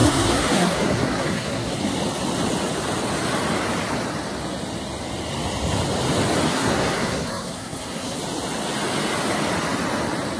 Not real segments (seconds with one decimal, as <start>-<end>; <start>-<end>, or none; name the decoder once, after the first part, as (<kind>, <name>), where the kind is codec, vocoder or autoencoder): 0.0-1.8 (codec, SNAC); 6.5-8.2